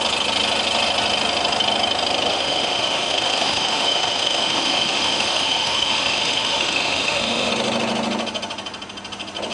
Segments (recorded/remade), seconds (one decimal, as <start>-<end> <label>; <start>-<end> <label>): 0.0-2.3 recorded; 2.3-7.5 remade; 7.5-9.5 recorded